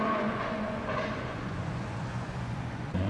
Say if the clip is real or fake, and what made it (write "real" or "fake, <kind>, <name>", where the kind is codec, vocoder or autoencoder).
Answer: fake, vocoder, Vocos